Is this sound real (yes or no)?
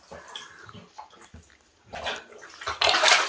yes